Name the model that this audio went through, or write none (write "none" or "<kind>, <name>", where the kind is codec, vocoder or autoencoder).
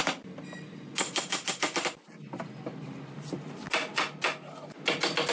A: none